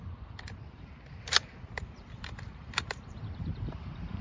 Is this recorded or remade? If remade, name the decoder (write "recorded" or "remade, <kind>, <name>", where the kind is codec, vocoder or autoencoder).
remade, vocoder, BigVGAN v2